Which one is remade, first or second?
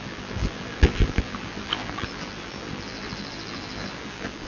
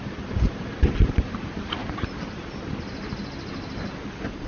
first